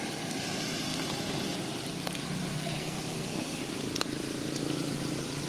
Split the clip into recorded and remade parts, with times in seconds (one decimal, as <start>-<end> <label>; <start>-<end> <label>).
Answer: 0.0-2.5 recorded; 2.5-3.6 remade; 3.6-5.5 recorded